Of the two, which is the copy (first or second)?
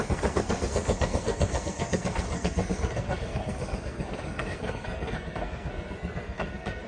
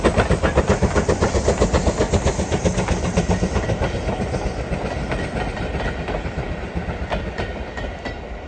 first